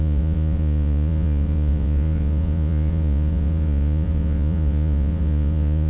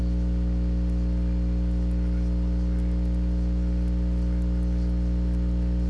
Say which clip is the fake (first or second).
first